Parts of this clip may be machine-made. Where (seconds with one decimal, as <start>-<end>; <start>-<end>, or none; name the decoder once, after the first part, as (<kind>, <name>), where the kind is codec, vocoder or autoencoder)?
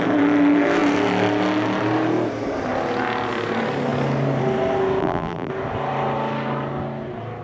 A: 5.0-5.5 (vocoder, BigVGAN v2)